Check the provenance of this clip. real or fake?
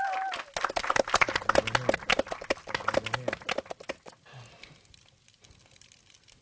real